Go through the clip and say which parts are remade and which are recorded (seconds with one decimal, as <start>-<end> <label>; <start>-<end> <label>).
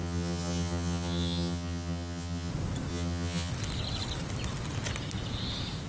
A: 0.0-2.5 remade; 2.5-2.9 recorded; 2.9-3.5 remade; 3.5-5.9 recorded